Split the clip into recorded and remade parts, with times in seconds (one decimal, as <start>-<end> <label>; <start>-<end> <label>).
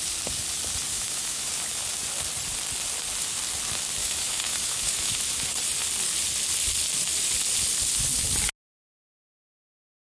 0.0-0.9 recorded; 0.9-1.5 remade; 1.5-4.0 recorded; 4.0-5.5 remade; 5.5-10.1 recorded